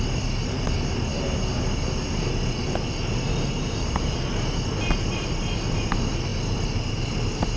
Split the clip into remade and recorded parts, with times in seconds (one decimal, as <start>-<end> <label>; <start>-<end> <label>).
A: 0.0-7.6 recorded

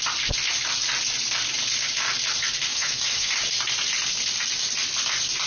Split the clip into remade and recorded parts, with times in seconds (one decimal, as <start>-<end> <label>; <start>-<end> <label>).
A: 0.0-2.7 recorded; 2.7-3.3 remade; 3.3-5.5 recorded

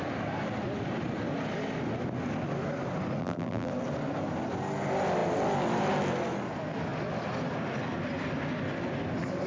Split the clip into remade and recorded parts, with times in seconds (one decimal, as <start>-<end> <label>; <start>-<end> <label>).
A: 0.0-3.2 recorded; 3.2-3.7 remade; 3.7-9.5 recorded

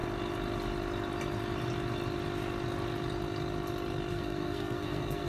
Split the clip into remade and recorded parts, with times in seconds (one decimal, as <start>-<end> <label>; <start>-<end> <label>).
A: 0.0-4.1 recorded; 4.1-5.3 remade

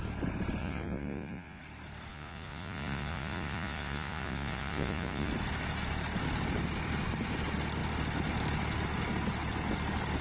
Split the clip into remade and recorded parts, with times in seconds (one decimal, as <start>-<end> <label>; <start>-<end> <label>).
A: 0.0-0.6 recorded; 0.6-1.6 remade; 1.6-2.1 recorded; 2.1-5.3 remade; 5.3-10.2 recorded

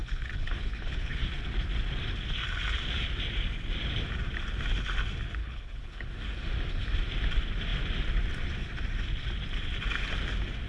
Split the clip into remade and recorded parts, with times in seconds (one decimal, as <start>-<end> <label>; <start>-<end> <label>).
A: 0.0-1.2 remade; 1.2-5.4 recorded; 5.4-6.1 remade; 6.1-10.7 recorded

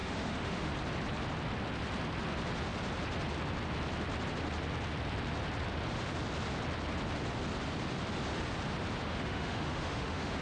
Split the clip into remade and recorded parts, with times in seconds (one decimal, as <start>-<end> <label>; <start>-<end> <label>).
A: 0.0-0.7 remade; 0.7-9.0 recorded; 9.0-10.4 remade

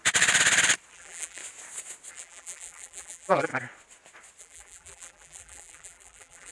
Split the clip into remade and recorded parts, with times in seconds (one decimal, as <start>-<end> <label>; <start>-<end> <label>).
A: 0.0-0.9 recorded; 0.9-1.4 remade; 1.4-2.1 recorded; 2.1-3.5 remade; 3.5-4.4 recorded; 4.4-6.5 remade